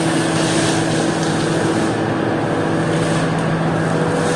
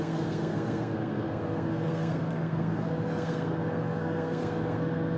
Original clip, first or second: first